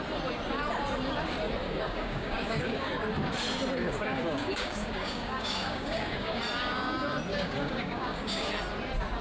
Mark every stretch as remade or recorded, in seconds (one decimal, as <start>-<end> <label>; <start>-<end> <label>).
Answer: 0.0-1.6 recorded; 1.6-2.9 remade; 2.9-3.8 recorded; 3.8-6.4 remade; 6.4-7.3 recorded; 7.3-8.5 remade; 8.5-9.2 recorded